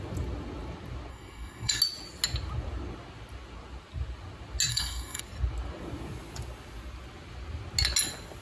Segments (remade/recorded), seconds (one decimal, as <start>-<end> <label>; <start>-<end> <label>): 0.0-1.1 recorded; 1.1-1.8 remade; 1.8-4.7 recorded; 4.7-5.2 remade; 5.2-8.4 recorded